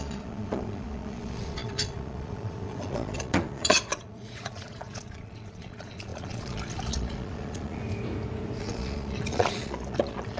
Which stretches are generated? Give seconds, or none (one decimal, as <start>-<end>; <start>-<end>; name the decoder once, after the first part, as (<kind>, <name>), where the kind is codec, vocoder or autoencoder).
0.0-7.8 (vocoder, Vocos); 8.6-10.4